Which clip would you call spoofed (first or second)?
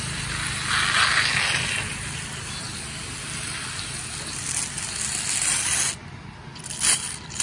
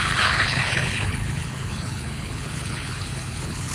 second